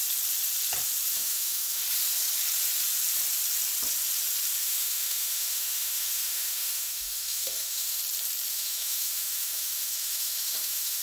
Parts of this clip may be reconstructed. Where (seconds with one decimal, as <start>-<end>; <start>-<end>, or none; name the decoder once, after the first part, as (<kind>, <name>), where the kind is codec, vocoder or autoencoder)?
1.1-1.8 (autoencoder, DAC-VAE); 4.6-8.0; 8.5-11.0